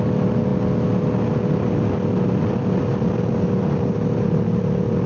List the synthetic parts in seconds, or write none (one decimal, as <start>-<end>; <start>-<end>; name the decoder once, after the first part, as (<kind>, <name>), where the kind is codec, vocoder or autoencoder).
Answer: none